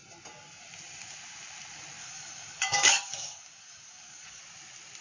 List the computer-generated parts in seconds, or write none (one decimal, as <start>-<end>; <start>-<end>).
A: 2.0-4.4